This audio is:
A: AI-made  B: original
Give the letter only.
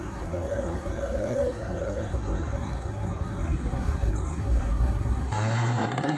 A